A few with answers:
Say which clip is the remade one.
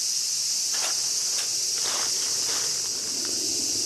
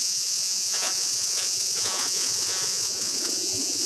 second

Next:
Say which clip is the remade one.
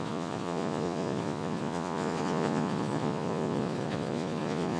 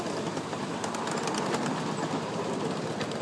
first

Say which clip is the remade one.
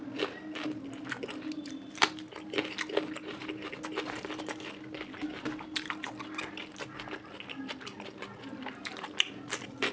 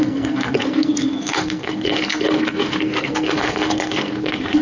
second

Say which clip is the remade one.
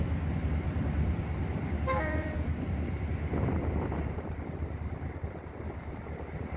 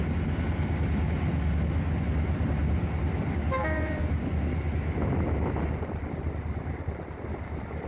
first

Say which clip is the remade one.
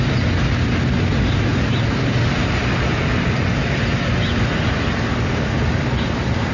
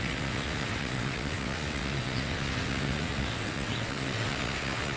second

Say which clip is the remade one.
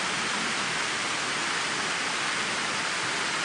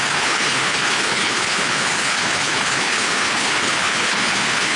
second